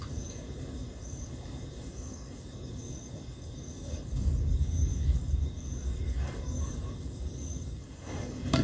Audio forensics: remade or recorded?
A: remade